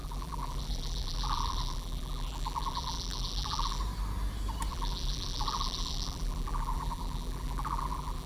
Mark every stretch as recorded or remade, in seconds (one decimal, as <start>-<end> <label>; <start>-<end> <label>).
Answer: 0.0-3.8 remade; 3.8-4.7 recorded; 4.7-8.3 remade